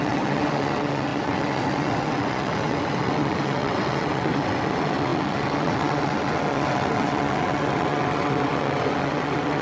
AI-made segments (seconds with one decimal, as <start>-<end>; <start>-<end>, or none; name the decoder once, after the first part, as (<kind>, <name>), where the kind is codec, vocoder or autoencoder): 0.0-9.6 (vocoder, WaveNeXt)